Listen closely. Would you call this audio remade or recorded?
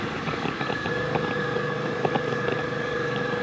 remade